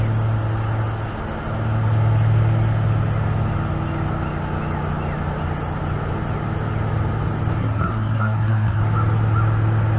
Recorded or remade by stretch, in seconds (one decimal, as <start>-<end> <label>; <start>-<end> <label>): 0.0-7.6 recorded; 7.6-8.8 remade; 8.8-10.0 recorded